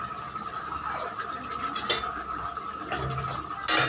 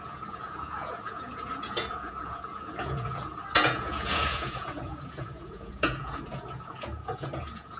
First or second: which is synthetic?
second